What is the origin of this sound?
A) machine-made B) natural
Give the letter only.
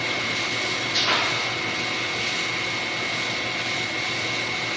B